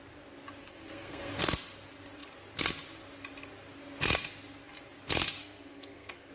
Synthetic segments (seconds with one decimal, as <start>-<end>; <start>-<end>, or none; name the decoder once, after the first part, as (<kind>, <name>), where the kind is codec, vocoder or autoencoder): 0.6-1.3 (codec, SNAC); 5.4-6.3